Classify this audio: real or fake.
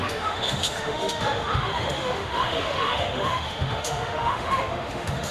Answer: fake